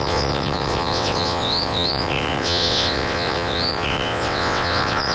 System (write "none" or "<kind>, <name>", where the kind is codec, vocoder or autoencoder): vocoder, WaveNeXt